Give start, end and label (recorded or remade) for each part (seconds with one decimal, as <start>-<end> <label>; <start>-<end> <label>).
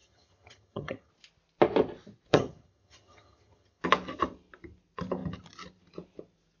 0.0-1.1 remade; 1.1-2.3 recorded; 2.3-3.8 remade; 3.8-6.6 recorded